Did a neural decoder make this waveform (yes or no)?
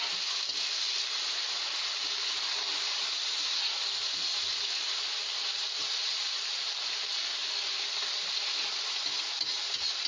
no